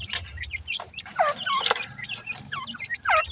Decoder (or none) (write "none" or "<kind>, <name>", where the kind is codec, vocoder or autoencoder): none